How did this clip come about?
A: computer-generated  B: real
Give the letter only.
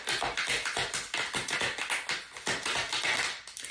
B